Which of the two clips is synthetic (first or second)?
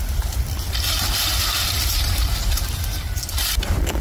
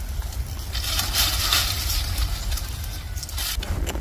first